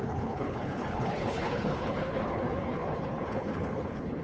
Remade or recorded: remade